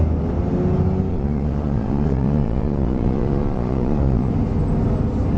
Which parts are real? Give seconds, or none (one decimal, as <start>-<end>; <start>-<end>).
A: 0.0-1.1; 4.3-5.4